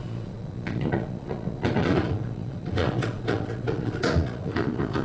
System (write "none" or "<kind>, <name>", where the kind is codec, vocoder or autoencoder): vocoder, Vocos